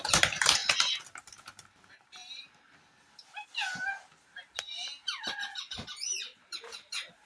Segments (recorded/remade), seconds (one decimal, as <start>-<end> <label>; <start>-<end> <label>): 0.0-0.6 remade; 0.6-1.2 recorded; 1.2-2.2 remade; 2.2-4.2 recorded; 4.2-7.3 remade